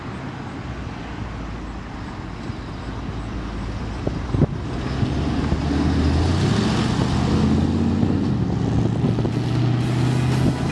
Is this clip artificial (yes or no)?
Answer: no